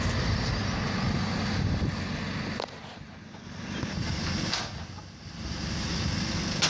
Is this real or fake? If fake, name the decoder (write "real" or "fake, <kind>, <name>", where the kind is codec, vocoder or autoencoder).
real